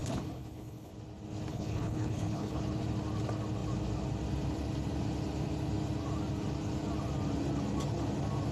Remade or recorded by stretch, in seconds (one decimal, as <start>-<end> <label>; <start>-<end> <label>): 0.0-0.9 remade; 0.9-1.5 recorded; 1.5-2.6 remade; 2.6-8.5 recorded